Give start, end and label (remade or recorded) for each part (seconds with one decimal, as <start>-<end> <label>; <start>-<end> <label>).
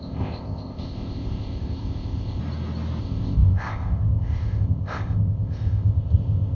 0.0-2.4 remade; 2.4-3.0 recorded; 3.0-6.5 remade